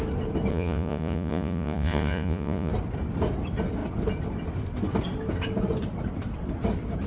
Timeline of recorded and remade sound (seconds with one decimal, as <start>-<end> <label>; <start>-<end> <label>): 0.0-0.5 recorded; 0.5-2.7 remade; 2.7-7.1 recorded